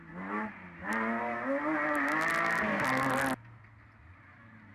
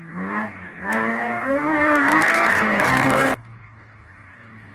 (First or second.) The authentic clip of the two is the first